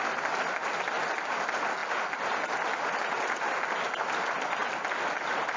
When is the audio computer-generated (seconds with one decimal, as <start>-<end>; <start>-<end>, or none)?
none